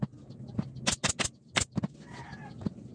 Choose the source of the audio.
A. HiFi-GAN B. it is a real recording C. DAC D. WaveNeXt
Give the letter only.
B